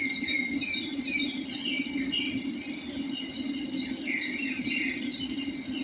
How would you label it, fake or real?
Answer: real